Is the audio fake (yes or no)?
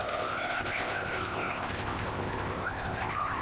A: yes